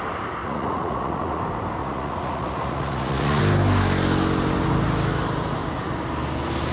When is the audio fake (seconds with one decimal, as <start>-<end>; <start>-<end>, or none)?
0.4-1.4; 1.8-3.4